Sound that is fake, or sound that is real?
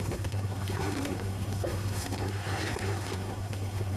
fake